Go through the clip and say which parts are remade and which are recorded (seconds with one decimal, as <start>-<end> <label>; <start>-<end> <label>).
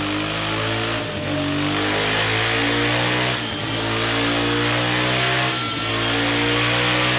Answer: 0.0-7.2 recorded